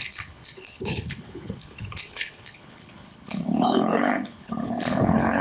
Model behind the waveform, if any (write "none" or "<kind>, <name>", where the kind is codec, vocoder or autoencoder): codec, HILCodec